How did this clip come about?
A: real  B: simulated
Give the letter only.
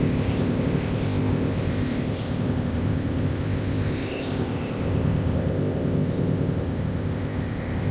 B